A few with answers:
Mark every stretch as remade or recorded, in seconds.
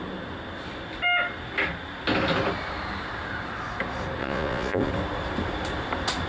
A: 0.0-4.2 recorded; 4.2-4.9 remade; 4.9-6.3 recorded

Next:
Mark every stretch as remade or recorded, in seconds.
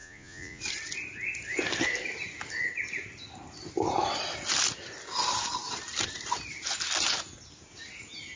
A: 0.0-0.6 remade; 0.6-8.4 recorded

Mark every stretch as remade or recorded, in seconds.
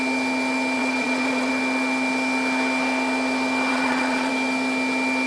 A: 0.0-0.8 recorded; 0.8-1.5 remade; 1.5-3.7 recorded; 3.7-4.3 remade; 4.3-5.3 recorded